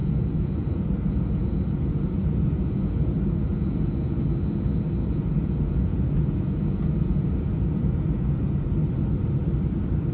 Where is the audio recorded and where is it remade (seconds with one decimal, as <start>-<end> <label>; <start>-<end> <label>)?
0.0-4.2 remade; 4.2-5.0 recorded; 5.0-8.7 remade; 8.7-10.1 recorded